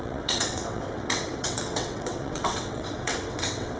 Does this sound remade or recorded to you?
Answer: remade